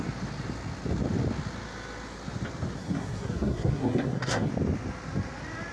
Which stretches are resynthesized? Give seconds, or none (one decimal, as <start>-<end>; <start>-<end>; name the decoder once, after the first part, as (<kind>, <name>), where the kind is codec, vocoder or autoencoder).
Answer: 2.8-4.5 (codec, SNAC)